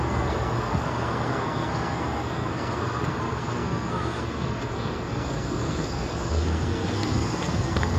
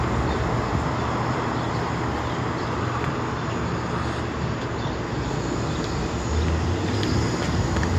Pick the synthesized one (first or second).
first